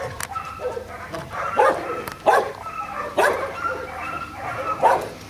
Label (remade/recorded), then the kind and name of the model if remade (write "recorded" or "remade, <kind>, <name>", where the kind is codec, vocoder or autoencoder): remade, vocoder, BigVGAN v2